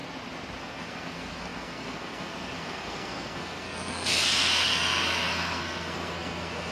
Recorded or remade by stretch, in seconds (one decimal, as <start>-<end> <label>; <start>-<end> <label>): 0.0-0.6 recorded; 0.6-6.7 remade